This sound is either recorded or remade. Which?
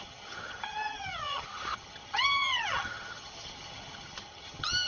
remade